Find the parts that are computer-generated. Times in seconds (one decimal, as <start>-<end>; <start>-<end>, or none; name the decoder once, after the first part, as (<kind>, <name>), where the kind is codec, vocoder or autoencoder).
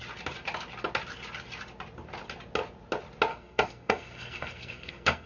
3.3-5.3 (codec, SNAC)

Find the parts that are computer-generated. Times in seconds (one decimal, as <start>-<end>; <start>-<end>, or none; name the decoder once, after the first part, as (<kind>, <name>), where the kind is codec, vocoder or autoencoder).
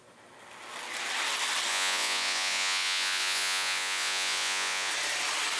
1.7-4.9 (vocoder, Vocos)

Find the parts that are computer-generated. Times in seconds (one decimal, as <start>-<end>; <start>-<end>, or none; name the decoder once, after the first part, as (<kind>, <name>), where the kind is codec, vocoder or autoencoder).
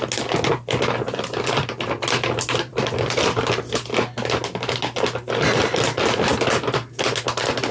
none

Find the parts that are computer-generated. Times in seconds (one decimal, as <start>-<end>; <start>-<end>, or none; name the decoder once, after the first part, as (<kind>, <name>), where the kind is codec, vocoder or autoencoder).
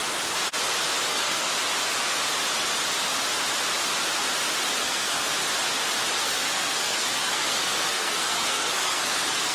1.1-1.5 (codec, SNAC); 4.8-5.3; 6.2-9.5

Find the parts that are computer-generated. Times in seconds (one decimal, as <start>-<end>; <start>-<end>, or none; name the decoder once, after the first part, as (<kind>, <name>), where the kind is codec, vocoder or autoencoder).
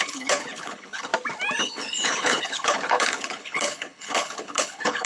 0.0-1.1 (codec, HILCodec); 1.6-5.1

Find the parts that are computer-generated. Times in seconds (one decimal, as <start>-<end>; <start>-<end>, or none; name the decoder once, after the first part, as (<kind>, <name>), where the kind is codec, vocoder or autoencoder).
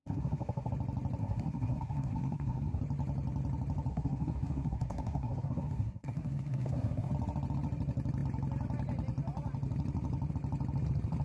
0.0-0.7 (codec, SNAC); 1.2-2.8; 3.9-7.1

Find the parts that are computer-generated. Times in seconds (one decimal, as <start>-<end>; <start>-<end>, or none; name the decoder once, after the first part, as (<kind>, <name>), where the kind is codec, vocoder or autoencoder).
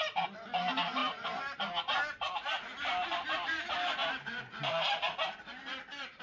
none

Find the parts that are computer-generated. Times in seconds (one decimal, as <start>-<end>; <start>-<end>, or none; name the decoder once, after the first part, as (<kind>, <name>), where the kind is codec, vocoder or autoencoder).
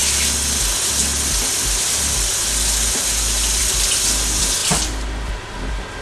none